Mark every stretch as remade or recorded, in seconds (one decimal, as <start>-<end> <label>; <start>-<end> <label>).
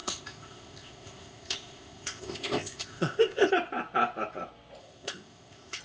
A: 0.0-3.5 remade; 3.5-4.8 recorded; 4.8-5.8 remade